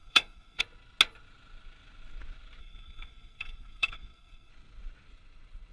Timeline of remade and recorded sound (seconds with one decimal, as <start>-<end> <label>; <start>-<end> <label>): 0.0-0.6 remade; 0.6-2.6 recorded; 2.6-4.5 remade; 4.5-5.7 recorded